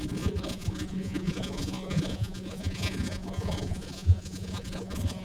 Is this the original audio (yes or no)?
no